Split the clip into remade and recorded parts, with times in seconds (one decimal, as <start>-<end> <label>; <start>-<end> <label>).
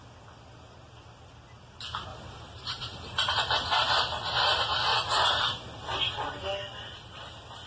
0.0-2.1 recorded; 2.1-3.5 remade; 3.5-4.9 recorded; 4.9-5.8 remade; 5.8-7.7 recorded